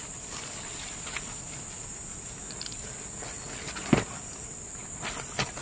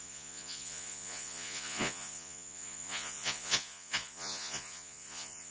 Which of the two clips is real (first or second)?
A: first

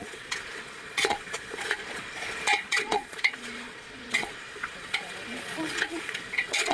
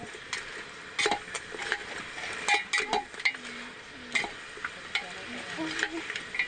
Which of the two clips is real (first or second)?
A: second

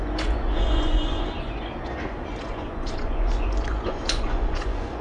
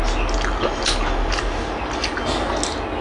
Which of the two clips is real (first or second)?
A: second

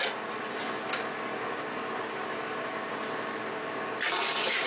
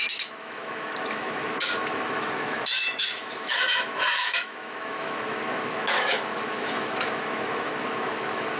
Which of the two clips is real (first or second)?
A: first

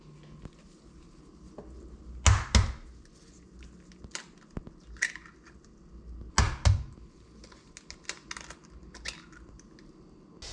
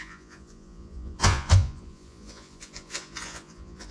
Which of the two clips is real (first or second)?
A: first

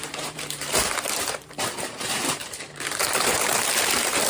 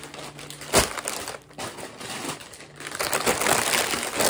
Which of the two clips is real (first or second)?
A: second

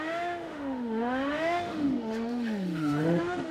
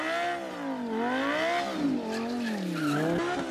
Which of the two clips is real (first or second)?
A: second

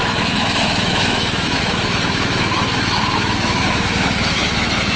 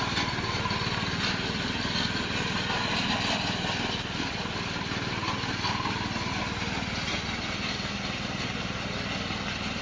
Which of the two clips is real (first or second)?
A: second